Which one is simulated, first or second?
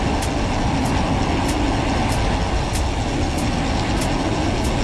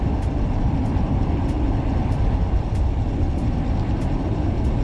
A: second